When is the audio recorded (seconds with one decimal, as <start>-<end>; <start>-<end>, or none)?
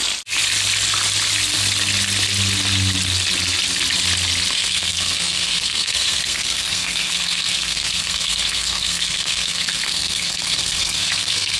0.0-4.5